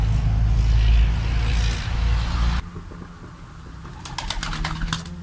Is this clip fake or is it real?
real